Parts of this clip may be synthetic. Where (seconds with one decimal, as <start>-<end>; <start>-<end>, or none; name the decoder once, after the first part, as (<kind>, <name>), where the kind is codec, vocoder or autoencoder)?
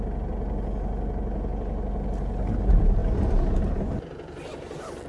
none